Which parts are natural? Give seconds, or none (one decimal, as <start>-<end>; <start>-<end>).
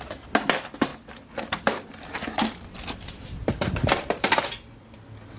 0.0-0.9; 3.1-5.4